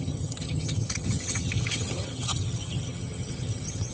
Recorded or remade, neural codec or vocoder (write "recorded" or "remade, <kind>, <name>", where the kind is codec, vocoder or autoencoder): remade, vocoder, HiFi-GAN